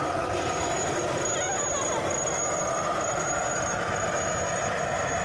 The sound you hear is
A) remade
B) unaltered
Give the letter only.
B